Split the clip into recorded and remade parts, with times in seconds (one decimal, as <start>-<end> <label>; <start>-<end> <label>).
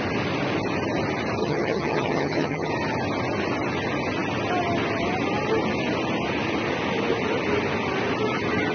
0.0-1.4 recorded; 1.4-2.7 remade; 2.7-8.7 recorded